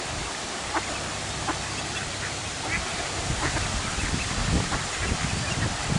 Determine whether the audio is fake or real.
real